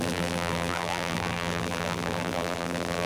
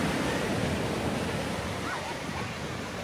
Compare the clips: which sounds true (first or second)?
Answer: second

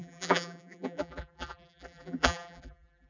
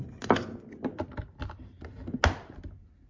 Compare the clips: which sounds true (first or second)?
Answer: second